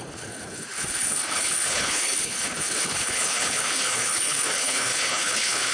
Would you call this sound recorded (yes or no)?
no